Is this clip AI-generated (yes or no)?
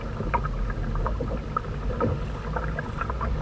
no